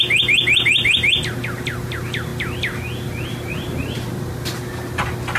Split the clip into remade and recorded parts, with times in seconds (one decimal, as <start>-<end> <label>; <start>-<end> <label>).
0.0-5.4 recorded